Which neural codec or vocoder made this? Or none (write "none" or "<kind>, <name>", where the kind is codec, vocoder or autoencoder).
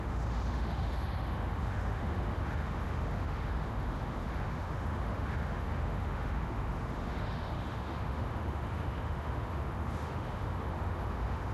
autoencoder, DAC-VAE